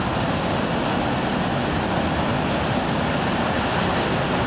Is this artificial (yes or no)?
no